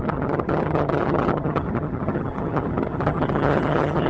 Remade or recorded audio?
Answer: remade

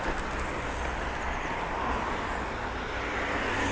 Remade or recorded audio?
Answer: recorded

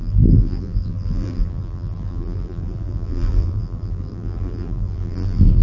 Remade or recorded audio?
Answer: remade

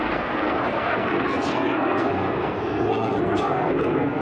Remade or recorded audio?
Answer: remade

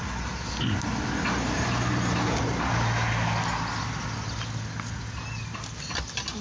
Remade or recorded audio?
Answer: recorded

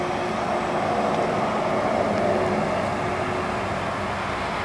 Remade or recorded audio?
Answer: recorded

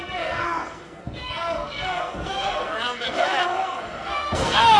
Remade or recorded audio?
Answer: remade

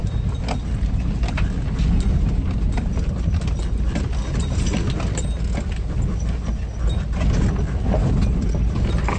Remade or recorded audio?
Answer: recorded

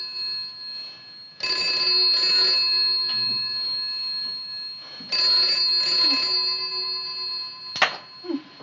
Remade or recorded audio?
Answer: recorded